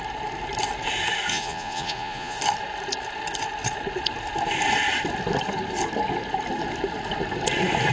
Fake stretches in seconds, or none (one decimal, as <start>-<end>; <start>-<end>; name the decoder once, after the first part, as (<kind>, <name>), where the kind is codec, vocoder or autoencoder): 1.3-2.4 (vocoder, Vocos)